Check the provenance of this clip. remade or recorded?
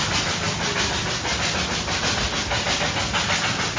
recorded